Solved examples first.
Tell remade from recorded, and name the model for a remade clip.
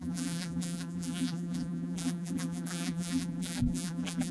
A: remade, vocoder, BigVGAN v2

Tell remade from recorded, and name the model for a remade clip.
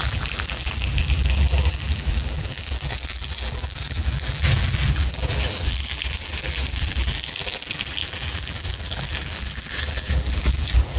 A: remade, vocoder, BigVGAN v2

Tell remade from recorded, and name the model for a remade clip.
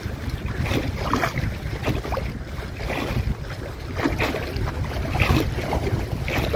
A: recorded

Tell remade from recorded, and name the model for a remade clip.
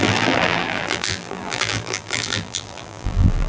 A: remade, vocoder, BigVGAN v2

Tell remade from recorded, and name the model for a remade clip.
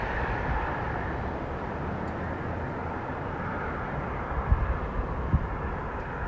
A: remade, vocoder, BigVGAN v2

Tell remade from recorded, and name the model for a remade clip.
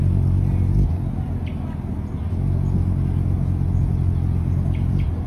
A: recorded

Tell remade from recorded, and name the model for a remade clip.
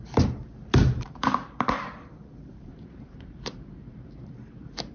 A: remade, vocoder, BigVGAN v2